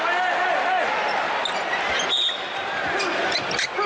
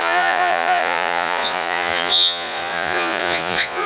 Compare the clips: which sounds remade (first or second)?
second